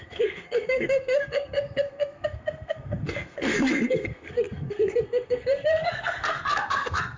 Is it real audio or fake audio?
fake